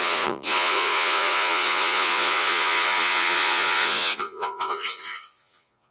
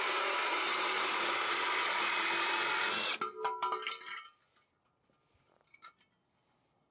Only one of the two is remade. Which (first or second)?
first